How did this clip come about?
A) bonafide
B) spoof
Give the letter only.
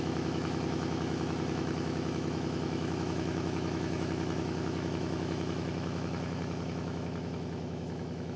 B